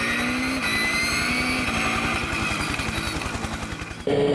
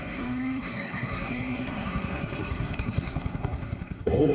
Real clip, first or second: first